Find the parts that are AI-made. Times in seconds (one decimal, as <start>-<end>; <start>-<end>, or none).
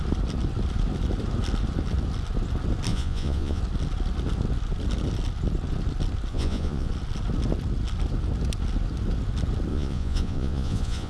2.9-3.6; 6.3-6.9; 9.7-11.1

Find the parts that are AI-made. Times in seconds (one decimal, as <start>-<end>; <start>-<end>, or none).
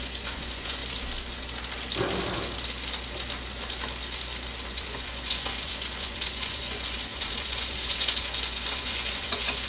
0.0-0.8; 4.7-9.7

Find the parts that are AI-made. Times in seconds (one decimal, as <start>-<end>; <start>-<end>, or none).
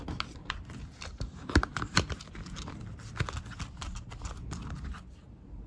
none